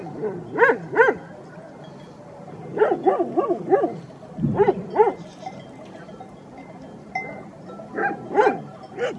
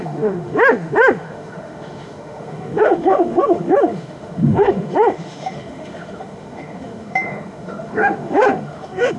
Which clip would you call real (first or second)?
first